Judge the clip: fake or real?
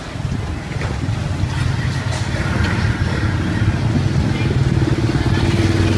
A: real